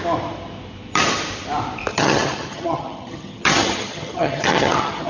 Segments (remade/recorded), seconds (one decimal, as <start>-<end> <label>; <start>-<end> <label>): 0.0-1.9 recorded; 1.9-5.1 remade